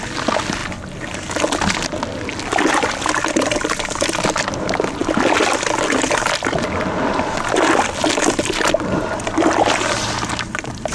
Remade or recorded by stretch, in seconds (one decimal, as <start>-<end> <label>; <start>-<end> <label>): 0.0-10.9 recorded